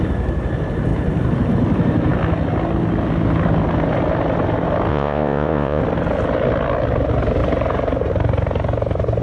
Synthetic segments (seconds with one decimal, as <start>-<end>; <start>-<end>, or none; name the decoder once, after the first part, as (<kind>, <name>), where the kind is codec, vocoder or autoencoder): 4.9-5.8 (vocoder, Vocos)